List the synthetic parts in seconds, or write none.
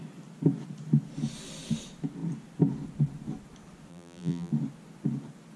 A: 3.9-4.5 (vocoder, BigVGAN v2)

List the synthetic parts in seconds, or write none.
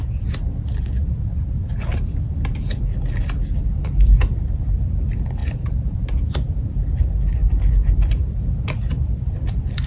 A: none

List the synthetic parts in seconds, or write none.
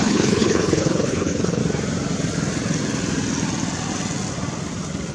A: 0.0-1.6 (codec, HILCodec)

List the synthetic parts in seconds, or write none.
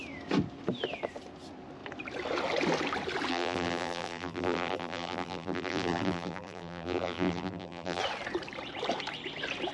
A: 3.3-8.0 (vocoder, BigVGAN v2)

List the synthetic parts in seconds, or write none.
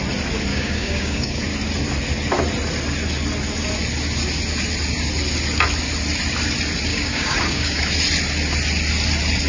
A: 0.5-1.4 (codec, DAC); 6.9-7.8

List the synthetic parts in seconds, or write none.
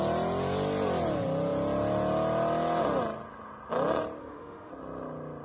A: 4.2-4.7 (autoencoder, DAC-VAE)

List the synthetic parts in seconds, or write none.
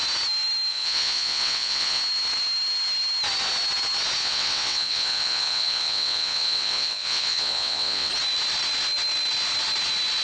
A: 0.7-2.0 (vocoder, WaveNeXt); 4.2-8.1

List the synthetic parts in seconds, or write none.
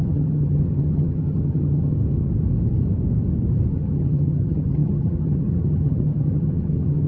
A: 0.0-2.0 (vocoder, HiFi-GAN); 3.7-7.1